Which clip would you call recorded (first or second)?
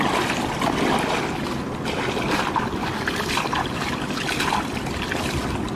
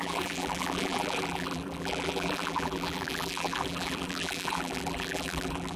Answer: first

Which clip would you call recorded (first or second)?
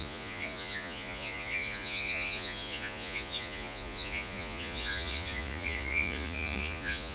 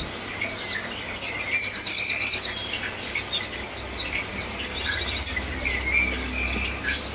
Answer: second